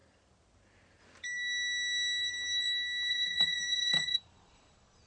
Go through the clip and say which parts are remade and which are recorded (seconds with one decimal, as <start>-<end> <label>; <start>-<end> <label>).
0.0-3.1 recorded; 3.1-5.1 remade